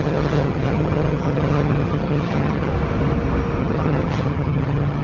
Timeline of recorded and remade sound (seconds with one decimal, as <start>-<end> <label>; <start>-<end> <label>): 0.0-2.7 remade; 2.7-3.6 recorded; 3.6-5.0 remade